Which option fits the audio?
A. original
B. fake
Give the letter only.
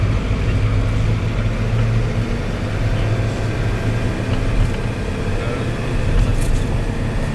A